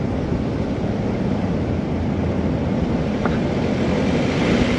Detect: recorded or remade recorded